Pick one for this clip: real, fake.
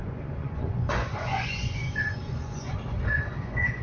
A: fake